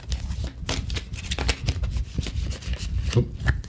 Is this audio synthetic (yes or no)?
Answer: no